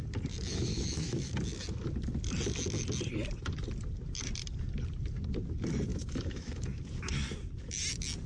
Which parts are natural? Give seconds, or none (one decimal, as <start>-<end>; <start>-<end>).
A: 0.0-0.5; 1.3-5.9; 6.8-8.3